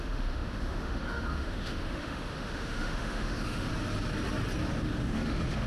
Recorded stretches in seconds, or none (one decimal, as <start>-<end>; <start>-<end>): 3.7-4.8